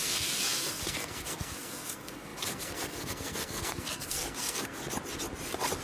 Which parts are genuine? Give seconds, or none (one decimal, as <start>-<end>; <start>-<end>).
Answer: 4.8-5.8